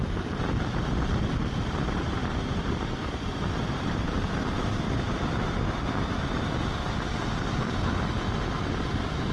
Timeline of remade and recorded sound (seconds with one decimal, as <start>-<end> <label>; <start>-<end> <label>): 0.0-9.3 recorded